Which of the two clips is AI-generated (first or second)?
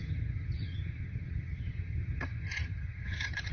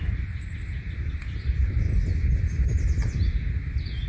first